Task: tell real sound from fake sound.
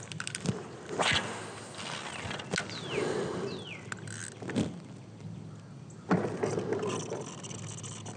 real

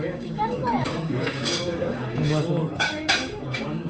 fake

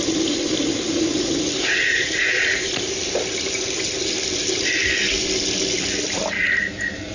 real